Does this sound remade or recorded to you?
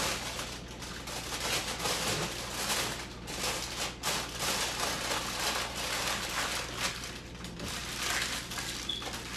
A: recorded